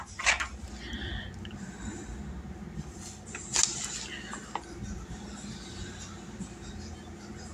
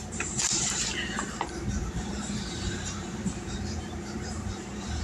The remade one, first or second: second